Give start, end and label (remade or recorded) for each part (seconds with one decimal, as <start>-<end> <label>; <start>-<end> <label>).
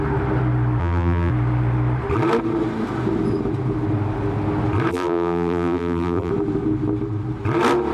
0.0-0.8 recorded; 0.8-1.3 remade; 1.3-4.9 recorded; 4.9-6.3 remade; 6.3-7.9 recorded